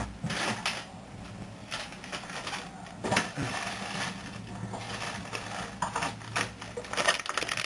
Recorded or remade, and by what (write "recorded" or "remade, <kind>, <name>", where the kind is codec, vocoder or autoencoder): recorded